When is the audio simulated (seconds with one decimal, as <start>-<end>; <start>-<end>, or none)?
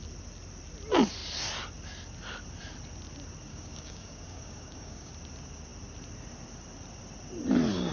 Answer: 3.5-5.1